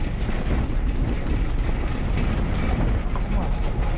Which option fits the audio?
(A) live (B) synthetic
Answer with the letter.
A